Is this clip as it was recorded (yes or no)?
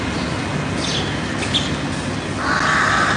yes